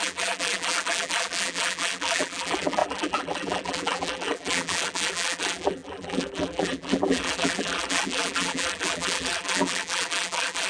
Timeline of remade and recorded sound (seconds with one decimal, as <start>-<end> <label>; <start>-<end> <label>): 0.0-10.7 remade